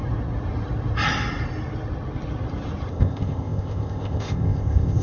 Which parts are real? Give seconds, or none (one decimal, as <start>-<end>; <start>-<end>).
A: 0.0-2.9